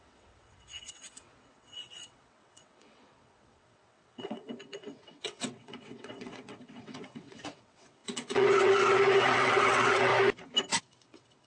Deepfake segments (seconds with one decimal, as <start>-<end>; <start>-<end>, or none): 0.0-10.1; 10.8-11.5